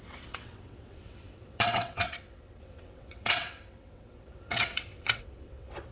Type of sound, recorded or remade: remade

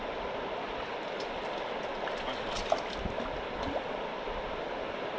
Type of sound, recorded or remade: recorded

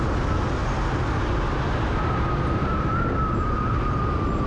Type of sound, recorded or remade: recorded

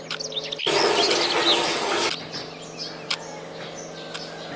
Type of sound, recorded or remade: recorded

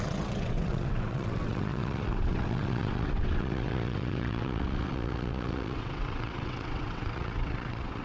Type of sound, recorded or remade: remade